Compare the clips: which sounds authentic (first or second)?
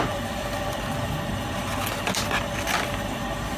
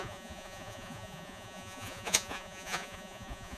first